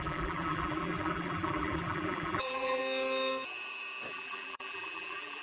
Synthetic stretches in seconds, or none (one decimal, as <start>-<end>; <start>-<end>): 0.0-2.8; 4.1-5.4